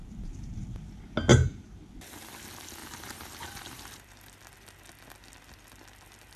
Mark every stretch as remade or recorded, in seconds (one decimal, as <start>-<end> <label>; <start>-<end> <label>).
0.0-0.6 remade; 0.6-1.3 recorded; 1.3-1.8 remade; 1.8-2.8 recorded; 2.8-4.3 remade; 4.3-6.4 recorded